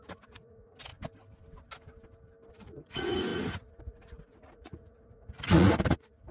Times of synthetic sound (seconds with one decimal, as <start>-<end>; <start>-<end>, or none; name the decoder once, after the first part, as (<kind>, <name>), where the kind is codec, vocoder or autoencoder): 0.0-0.9 (vocoder, Vocos); 2.5-6.3